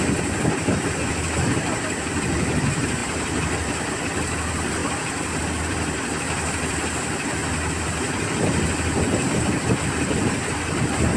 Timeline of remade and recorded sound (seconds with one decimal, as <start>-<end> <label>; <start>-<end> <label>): 0.0-7.4 remade; 7.4-9.7 recorded; 9.7-11.2 remade